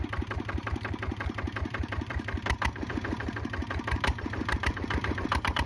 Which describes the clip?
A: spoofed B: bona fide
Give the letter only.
A